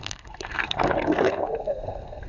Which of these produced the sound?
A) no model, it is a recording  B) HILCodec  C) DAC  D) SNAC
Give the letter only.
D